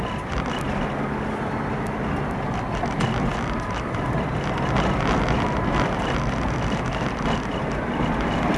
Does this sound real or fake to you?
real